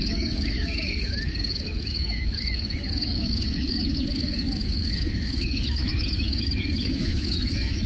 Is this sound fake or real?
fake